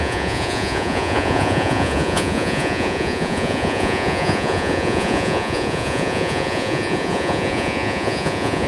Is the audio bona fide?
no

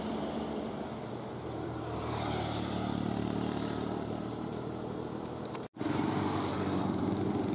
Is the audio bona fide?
no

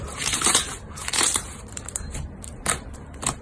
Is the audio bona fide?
no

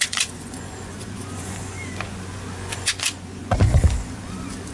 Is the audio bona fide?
no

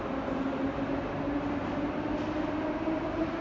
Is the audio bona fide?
yes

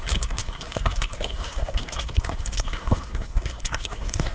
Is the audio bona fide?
no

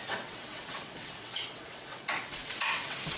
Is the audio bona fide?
no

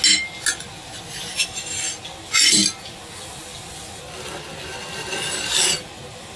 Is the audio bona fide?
yes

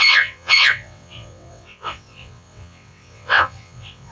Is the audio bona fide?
no